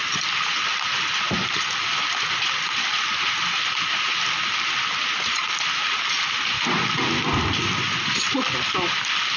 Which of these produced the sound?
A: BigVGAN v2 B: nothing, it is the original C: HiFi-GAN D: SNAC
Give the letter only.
B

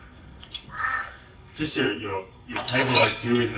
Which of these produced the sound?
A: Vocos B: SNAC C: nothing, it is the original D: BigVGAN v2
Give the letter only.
B